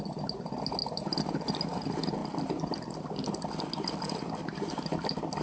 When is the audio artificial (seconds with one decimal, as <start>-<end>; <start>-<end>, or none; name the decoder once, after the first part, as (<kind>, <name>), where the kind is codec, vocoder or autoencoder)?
none